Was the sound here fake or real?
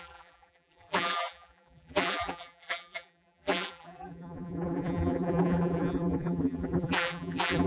fake